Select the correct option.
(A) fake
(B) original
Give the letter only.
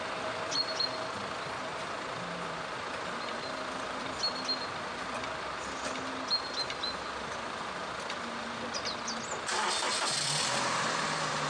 B